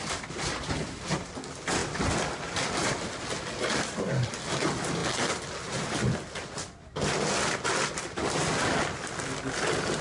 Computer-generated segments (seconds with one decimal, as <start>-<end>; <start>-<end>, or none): none